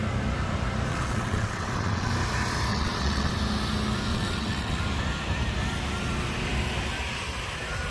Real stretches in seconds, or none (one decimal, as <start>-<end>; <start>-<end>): 0.0-0.9; 2.1-2.7; 3.3-4.1; 4.8-7.9